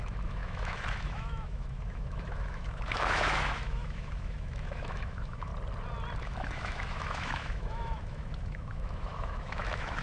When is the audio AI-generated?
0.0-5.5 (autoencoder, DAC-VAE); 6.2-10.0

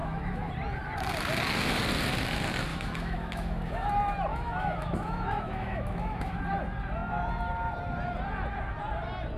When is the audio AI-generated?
0.0-0.5 (autoencoder, DAC-VAE); 2.7-3.9; 4.3-6.4

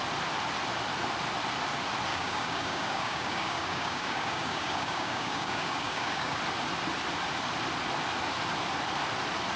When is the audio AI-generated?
2.1-6.4 (codec, DAC)